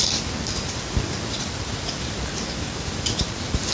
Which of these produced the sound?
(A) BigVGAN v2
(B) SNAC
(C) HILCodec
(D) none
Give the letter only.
D